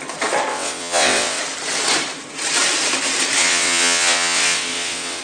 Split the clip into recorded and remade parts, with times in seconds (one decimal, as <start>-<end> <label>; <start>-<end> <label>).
0.0-0.5 recorded; 0.5-1.4 remade; 1.4-3.4 recorded; 3.4-5.2 remade